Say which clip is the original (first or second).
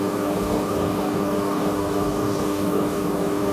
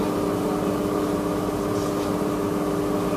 second